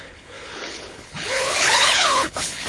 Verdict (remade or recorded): remade